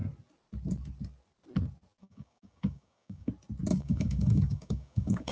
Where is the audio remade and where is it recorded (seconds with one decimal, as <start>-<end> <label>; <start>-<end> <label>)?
0.0-2.0 recorded; 2.0-3.3 remade; 3.3-3.7 recorded; 3.7-5.3 remade